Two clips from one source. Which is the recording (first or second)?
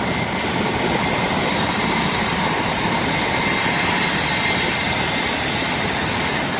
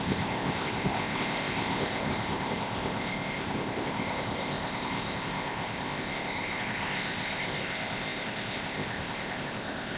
first